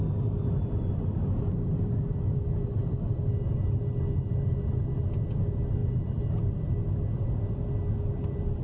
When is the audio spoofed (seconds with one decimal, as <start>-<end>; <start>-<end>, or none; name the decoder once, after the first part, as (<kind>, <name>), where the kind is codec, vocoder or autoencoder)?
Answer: none